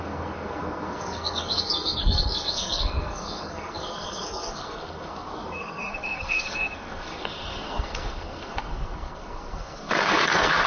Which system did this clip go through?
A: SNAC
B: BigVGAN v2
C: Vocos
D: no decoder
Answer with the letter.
A